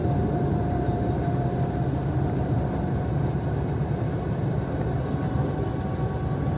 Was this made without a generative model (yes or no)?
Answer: yes